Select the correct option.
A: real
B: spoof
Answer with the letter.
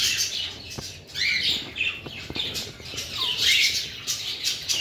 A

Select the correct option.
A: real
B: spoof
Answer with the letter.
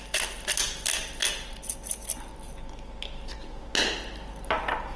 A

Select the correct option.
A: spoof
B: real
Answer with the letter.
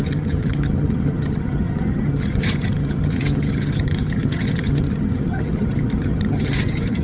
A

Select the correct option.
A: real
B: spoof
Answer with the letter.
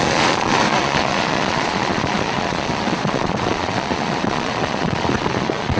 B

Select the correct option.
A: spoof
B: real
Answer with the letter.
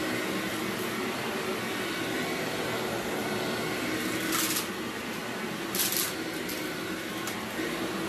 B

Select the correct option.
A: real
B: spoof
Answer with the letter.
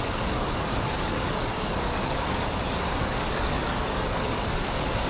B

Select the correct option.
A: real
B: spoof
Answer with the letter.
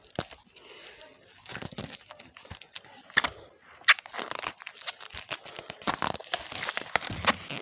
A